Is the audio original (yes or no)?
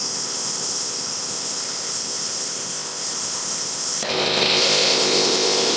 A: no